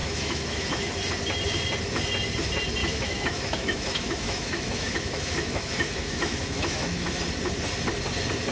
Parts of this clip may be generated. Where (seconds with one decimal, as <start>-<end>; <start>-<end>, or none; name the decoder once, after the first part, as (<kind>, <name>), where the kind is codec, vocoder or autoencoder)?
0.0-0.9 (autoencoder, DAC-VAE); 2.8-7.1